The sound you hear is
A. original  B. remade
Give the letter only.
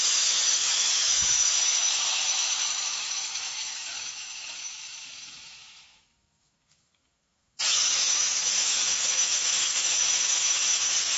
B